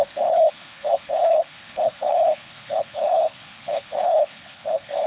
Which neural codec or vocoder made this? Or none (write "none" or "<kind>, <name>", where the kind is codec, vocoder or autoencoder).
codec, HILCodec